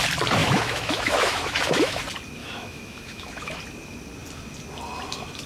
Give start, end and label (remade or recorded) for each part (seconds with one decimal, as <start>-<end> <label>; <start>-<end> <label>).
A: 0.0-0.4 recorded; 0.4-2.0 remade; 2.0-2.4 recorded; 2.4-3.6 remade; 3.6-5.5 recorded